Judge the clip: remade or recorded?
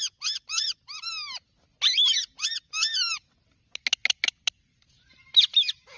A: recorded